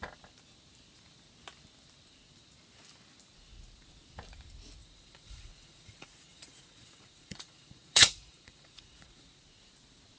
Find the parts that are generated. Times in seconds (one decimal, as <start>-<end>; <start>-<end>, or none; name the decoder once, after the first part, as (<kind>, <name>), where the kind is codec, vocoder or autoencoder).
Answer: 4.8-9.4 (vocoder, Vocos)